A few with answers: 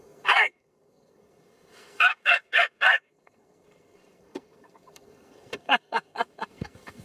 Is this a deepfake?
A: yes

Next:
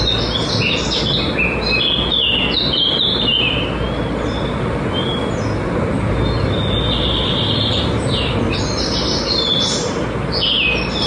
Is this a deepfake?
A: no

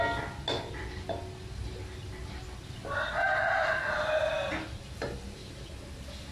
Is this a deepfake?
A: no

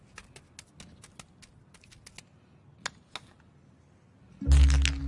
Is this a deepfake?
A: no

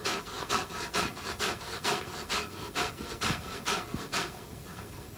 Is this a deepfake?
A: yes